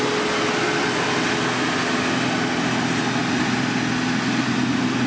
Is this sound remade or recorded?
recorded